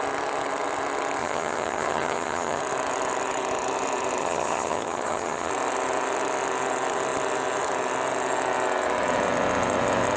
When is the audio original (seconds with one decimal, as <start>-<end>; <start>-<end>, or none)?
0.0-1.2; 2.6-4.2; 5.5-10.2